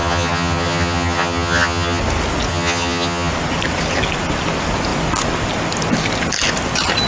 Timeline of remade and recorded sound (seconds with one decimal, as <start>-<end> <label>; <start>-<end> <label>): 0.0-2.0 remade; 2.0-2.5 recorded; 2.5-3.3 remade; 3.3-7.1 recorded